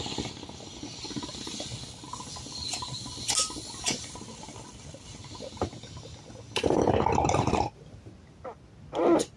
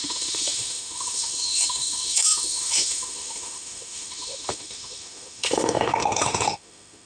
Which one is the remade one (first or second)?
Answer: second